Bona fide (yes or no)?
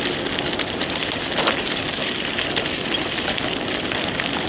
no